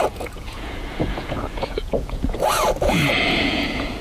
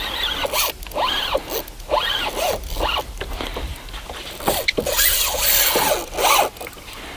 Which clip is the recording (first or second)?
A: second